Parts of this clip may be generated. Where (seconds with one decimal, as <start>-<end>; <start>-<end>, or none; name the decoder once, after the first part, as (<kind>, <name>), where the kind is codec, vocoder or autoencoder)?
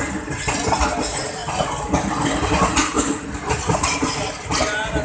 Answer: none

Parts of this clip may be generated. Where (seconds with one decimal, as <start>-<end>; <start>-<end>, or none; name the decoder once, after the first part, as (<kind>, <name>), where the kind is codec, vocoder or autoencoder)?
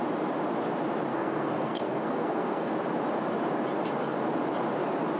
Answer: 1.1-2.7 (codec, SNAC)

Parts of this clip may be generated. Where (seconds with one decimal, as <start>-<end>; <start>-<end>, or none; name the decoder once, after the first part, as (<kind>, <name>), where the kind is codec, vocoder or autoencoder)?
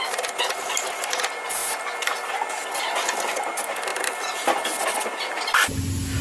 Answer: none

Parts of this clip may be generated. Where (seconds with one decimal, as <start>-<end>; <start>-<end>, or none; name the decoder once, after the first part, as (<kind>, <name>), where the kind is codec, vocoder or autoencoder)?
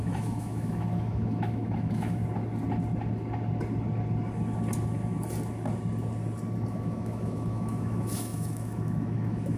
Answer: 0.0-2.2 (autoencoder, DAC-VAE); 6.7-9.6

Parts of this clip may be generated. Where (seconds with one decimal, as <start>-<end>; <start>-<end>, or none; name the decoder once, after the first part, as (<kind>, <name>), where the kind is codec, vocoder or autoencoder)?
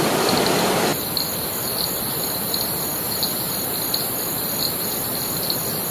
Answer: none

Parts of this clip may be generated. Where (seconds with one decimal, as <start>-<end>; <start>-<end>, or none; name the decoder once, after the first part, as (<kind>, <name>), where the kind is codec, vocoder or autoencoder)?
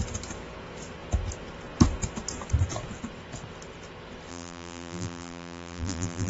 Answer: 4.3-6.3 (vocoder, BigVGAN v2)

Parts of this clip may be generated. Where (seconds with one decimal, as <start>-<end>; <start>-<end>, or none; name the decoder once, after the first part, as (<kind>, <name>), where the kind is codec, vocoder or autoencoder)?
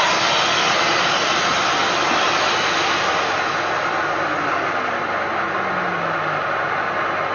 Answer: none